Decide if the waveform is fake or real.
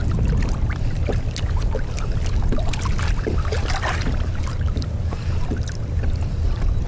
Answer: real